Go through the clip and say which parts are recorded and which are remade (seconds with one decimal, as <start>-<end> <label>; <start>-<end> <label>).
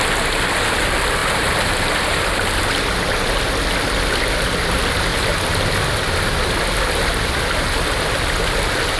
0.0-9.0 recorded